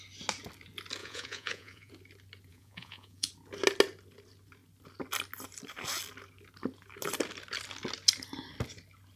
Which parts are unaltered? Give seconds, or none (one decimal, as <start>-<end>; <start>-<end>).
0.0-1.0; 1.9-2.5; 3.3-9.2